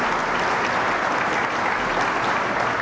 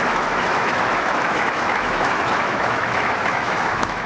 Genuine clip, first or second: first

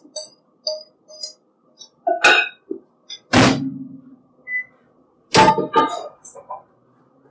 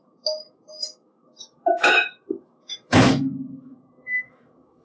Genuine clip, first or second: first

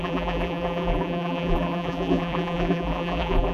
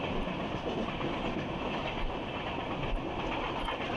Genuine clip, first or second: second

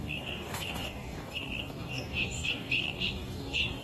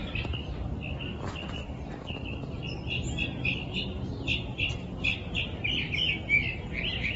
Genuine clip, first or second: second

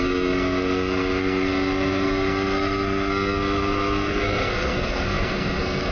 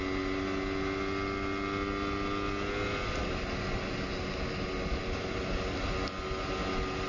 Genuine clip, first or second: second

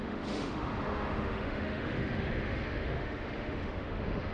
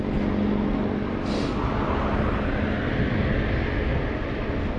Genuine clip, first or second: second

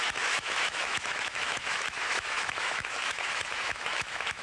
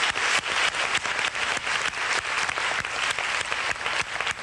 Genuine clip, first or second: second